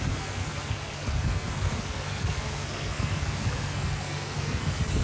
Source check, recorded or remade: remade